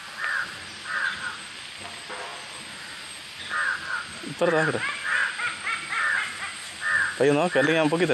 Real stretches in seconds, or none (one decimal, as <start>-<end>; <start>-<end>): 0.0-8.1